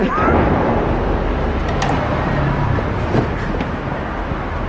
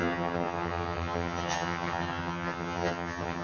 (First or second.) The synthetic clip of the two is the second